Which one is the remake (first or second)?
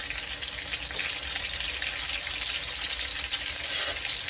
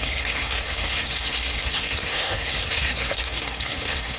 second